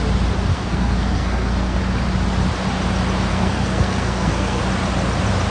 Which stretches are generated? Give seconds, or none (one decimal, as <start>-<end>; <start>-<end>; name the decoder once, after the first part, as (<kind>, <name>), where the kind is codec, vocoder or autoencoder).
0.5-1.8 (codec, SNAC); 3.3-4.6